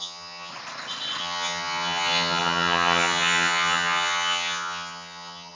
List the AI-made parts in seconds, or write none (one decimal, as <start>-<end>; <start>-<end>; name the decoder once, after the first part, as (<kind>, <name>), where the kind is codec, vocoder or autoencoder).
0.0-0.5 (vocoder, HiFi-GAN); 1.2-5.5

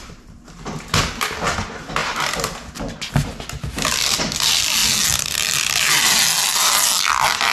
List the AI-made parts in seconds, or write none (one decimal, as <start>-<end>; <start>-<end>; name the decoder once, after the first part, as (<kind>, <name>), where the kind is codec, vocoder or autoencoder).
none

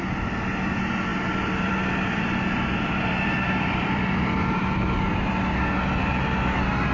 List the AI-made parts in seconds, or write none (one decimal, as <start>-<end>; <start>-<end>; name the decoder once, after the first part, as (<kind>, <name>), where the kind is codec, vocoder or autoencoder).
1.1-5.2 (vocoder, BigVGAN v2)

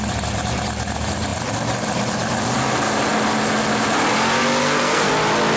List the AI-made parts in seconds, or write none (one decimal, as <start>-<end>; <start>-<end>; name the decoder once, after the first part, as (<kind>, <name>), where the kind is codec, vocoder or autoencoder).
4.6-5.1 (codec, SNAC)